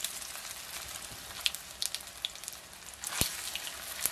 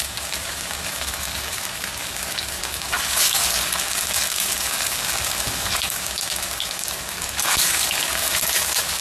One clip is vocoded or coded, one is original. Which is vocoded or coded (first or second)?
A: second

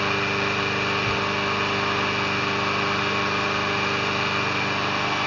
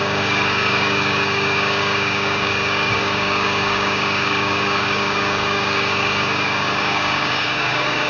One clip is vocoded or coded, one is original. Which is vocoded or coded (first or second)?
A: second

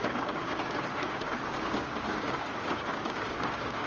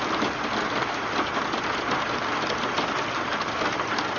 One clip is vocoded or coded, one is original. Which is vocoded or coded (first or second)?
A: first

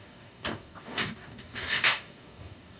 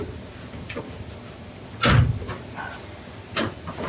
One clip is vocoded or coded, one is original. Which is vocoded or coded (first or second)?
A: first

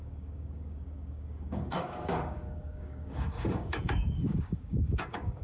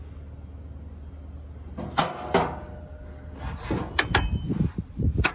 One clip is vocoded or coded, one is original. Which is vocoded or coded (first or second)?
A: first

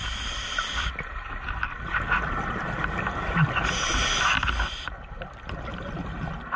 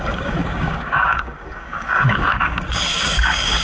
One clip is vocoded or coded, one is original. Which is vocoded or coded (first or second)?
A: second